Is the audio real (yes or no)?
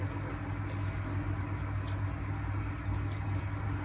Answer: yes